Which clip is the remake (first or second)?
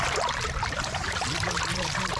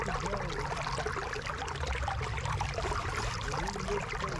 first